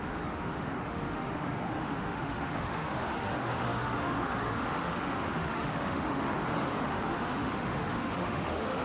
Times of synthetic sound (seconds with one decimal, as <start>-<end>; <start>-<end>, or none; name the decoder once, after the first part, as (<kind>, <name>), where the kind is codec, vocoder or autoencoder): 0.0-8.8 (autoencoder, DAC-VAE)

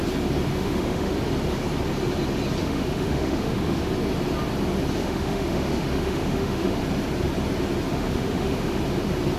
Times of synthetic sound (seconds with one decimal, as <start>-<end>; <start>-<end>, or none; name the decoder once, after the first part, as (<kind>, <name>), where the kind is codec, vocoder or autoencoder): 0.5-1.1 (autoencoder, DAC-VAE); 2.6-3.9; 5.0-6.8; 7.9-8.8

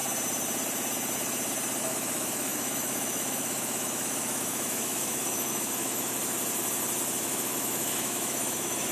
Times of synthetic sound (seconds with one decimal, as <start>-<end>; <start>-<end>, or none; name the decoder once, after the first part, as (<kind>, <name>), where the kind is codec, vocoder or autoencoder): 1.8-6.2 (autoencoder, DAC-VAE); 7.2-8.9

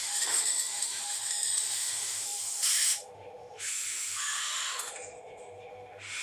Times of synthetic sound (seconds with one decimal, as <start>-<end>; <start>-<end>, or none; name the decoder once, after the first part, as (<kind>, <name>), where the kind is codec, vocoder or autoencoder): 0.0-6.2 (autoencoder, DAC-VAE)

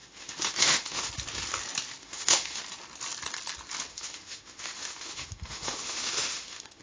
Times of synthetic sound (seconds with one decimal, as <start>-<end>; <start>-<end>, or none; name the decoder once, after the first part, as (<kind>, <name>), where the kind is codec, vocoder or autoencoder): 0.0-1.1 (autoencoder, DAC-VAE); 2.0-2.6; 3.9-6.8

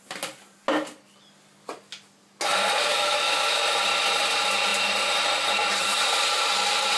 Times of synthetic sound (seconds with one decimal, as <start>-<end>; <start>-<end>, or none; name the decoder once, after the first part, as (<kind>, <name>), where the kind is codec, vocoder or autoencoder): 2.9-3.6 (autoencoder, DAC-VAE)

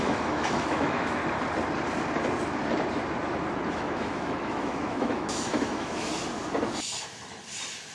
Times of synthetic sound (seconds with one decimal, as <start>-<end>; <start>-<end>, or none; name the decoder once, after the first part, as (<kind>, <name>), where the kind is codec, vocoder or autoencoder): 0.0-1.2 (autoencoder, DAC-VAE); 3.7-6.1